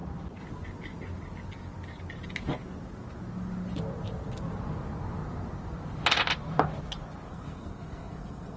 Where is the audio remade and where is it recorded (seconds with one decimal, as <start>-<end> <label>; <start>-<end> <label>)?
0.0-7.3 recorded; 7.3-8.6 remade